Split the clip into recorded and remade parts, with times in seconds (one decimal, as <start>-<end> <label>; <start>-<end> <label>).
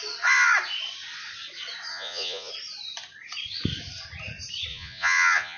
0.0-1.9 recorded; 1.9-2.5 remade; 2.5-4.7 recorded; 4.7-5.6 remade